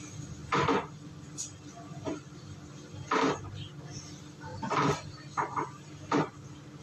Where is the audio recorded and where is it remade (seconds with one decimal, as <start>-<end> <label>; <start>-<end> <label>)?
0.0-6.8 remade